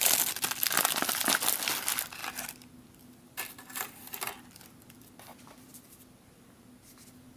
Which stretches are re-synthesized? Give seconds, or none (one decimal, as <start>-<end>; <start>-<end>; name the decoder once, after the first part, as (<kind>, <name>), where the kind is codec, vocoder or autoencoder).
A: 2.2-6.6 (vocoder, BigVGAN v2)